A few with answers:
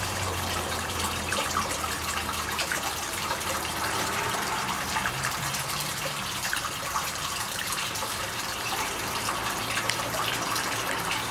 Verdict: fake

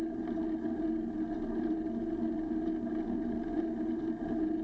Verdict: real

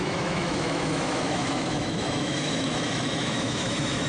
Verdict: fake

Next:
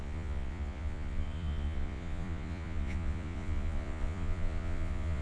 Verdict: fake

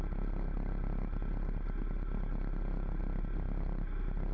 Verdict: real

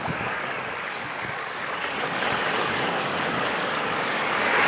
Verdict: fake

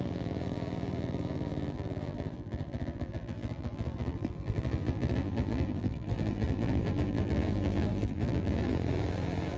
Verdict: fake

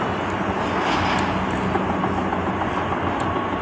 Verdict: real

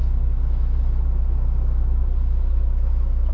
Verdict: real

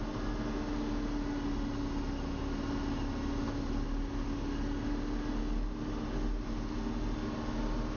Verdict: real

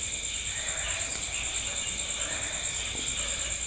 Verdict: real